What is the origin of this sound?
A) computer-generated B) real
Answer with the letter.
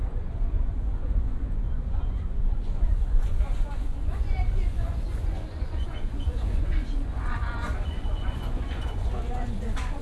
A